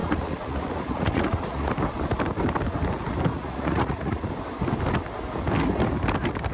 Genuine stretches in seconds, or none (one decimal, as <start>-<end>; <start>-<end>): 1.7-3.3; 4.3-6.5